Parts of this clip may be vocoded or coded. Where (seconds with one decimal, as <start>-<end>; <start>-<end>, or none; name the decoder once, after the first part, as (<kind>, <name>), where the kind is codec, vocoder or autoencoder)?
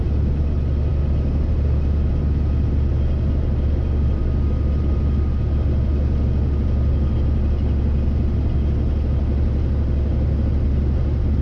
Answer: none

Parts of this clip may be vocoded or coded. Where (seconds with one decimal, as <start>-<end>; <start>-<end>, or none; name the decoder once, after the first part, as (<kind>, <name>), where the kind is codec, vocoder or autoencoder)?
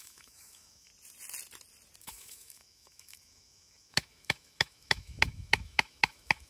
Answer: 0.0-0.9 (autoencoder, DAC-VAE); 2.0-6.5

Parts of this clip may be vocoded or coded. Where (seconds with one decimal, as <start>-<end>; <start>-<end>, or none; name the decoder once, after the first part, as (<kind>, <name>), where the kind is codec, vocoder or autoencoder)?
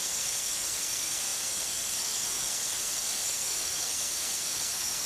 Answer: 0.0-5.1 (codec, SNAC)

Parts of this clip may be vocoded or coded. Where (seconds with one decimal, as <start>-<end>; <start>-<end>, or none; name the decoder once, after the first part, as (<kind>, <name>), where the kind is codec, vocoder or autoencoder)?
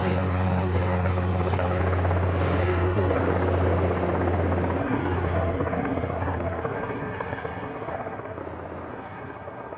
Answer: 0.0-1.8 (codec, SNAC); 2.6-3.2; 4.8-8.4; 8.9-9.8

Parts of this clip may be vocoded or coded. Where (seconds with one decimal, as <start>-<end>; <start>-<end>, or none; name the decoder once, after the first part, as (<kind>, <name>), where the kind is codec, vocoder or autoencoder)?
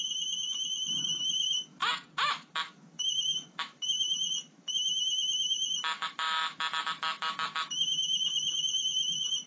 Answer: 0.0-1.8 (autoencoder, DAC-VAE); 2.3-9.5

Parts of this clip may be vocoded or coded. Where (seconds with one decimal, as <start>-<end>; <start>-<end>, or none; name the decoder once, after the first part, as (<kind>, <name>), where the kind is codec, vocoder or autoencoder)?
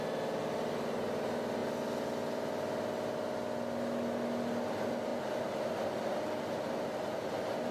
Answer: none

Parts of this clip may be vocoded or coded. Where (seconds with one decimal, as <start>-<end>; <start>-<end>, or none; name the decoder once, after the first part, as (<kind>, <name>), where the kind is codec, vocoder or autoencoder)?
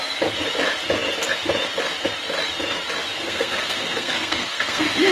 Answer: 3.2-5.1 (codec, SNAC)